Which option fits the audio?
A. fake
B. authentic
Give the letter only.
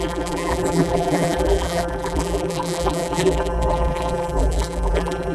A